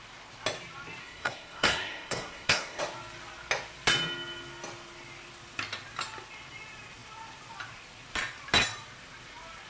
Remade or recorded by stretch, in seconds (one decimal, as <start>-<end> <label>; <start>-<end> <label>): 0.0-1.0 recorded; 1.0-2.8 remade; 2.8-9.7 recorded